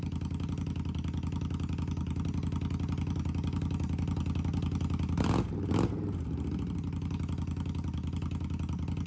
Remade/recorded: recorded